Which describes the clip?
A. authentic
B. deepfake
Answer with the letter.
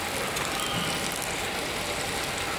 A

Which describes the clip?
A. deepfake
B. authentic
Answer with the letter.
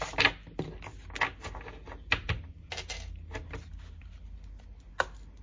B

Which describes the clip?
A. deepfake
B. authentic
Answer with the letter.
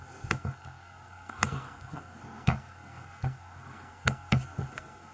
A